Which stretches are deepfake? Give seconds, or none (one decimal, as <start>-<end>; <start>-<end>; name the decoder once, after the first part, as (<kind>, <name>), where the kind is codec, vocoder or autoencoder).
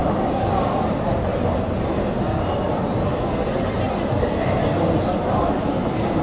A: none